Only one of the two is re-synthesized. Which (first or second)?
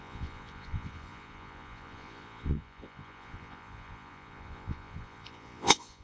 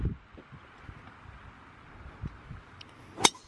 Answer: first